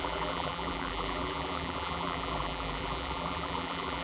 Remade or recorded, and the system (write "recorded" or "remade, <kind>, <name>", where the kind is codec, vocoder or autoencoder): remade, vocoder, BigVGAN v2